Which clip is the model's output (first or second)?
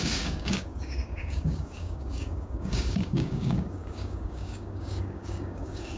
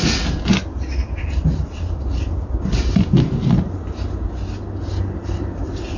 first